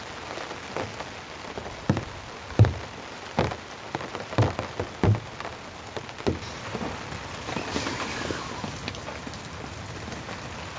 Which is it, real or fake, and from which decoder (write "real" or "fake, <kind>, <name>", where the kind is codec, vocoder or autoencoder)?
real